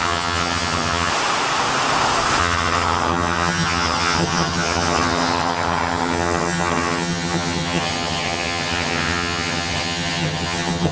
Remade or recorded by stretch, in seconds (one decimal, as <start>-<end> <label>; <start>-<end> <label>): 0.0-1.1 remade; 1.1-2.4 recorded; 2.4-10.9 remade